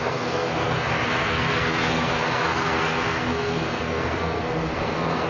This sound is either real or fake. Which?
fake